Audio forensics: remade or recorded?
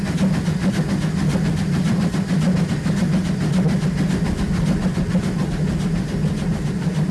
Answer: recorded